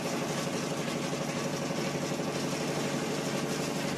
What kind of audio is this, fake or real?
real